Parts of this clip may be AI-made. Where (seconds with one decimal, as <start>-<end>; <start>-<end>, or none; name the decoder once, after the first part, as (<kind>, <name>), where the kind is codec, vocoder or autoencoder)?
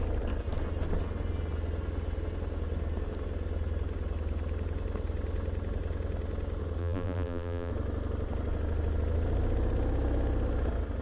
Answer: 6.8-7.7 (vocoder, BigVGAN v2)